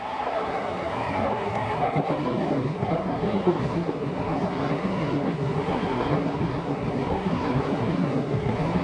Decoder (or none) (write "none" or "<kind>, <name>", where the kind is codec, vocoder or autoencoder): codec, SNAC